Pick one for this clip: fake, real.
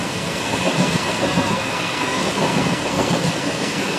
fake